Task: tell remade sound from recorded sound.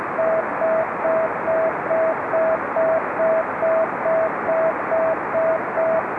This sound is recorded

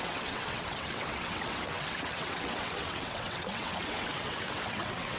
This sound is remade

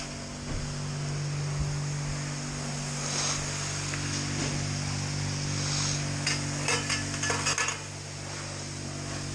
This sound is recorded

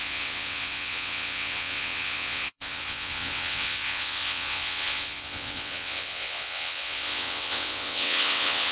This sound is remade